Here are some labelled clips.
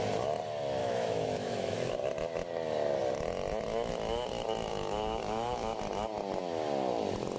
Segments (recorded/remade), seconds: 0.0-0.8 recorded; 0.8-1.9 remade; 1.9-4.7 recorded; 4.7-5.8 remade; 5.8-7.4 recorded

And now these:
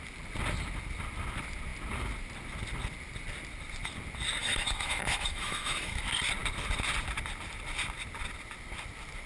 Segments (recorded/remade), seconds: 0.0-4.4 recorded; 4.4-6.0 remade; 6.0-9.3 recorded

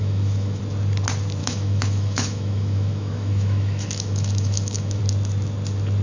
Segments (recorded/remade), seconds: 0.0-0.6 remade; 0.6-1.4 recorded; 1.4-5.0 remade; 5.0-6.0 recorded

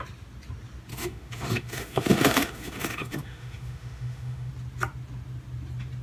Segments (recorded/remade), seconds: 0.0-0.9 recorded; 0.9-4.5 remade; 4.5-6.0 recorded

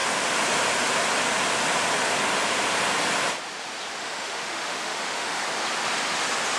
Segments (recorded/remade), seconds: 0.0-4.0 recorded; 4.0-5.4 remade; 5.4-6.6 recorded

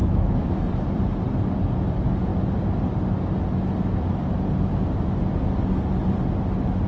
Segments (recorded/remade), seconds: 0.0-0.7 remade; 0.7-6.9 recorded